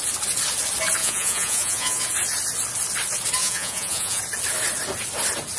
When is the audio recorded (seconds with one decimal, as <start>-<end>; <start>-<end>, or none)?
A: 0.0-1.0; 2.0-3.4; 4.2-5.6